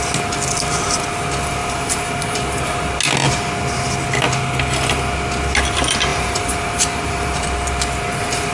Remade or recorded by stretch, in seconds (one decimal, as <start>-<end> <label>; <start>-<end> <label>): 0.0-1.6 recorded; 1.6-2.6 remade; 2.6-6.1 recorded; 6.1-7.4 remade; 7.4-8.5 recorded